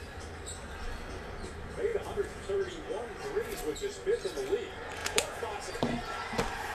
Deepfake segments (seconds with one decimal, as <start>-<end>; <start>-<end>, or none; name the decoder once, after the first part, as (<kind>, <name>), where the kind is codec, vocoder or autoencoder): 1.9-2.9 (vocoder, Vocos); 5.0-5.7